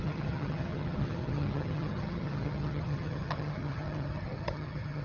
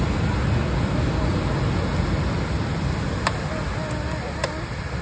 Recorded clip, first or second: second